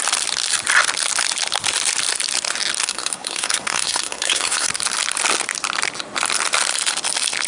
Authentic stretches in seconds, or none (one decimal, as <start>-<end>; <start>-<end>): 0.0-2.8; 4.7-7.5